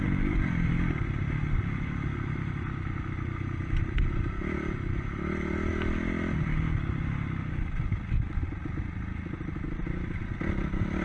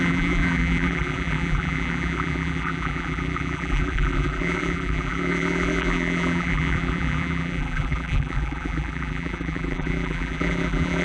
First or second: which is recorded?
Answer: first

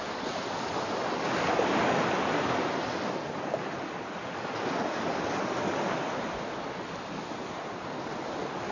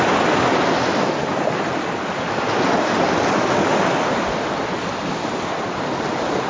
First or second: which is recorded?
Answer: first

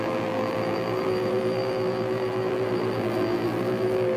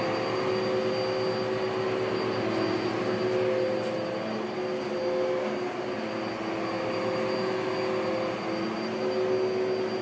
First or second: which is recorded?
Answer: second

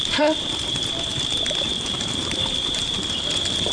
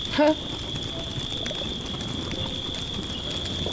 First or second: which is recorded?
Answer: second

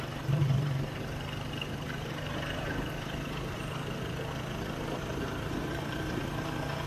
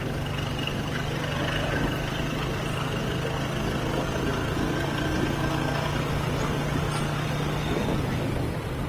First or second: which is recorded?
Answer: second